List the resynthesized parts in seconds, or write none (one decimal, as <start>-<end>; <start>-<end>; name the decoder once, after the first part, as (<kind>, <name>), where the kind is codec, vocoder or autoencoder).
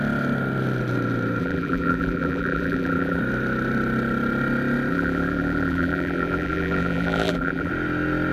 1.4-3.2 (vocoder, BigVGAN v2); 4.9-7.7